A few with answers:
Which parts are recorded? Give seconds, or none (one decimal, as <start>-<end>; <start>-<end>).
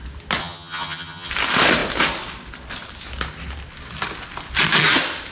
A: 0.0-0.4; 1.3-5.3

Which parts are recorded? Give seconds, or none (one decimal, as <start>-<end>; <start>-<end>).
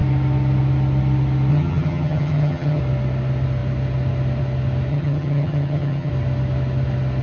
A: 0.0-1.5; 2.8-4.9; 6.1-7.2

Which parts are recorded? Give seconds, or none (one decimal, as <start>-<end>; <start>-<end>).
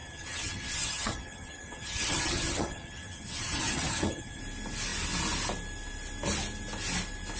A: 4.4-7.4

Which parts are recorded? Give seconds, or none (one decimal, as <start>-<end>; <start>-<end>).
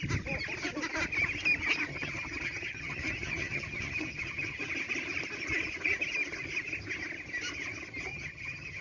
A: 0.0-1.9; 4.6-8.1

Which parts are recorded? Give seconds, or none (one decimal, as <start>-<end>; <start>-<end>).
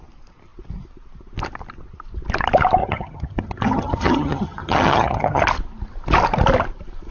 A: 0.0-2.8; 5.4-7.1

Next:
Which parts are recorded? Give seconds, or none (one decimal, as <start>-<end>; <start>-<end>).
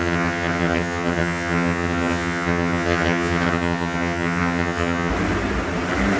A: 5.1-6.2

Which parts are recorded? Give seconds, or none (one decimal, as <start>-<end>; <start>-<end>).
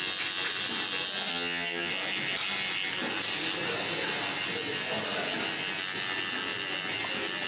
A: 0.0-1.3; 1.9-7.5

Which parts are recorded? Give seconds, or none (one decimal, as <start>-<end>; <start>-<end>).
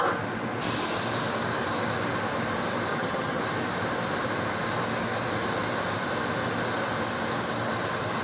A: 0.0-2.9; 3.4-8.2